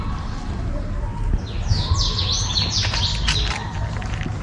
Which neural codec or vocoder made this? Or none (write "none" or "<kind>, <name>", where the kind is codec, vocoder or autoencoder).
none